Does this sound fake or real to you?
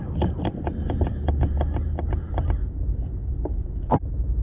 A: real